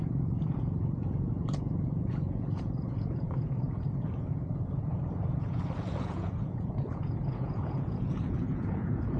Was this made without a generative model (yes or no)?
no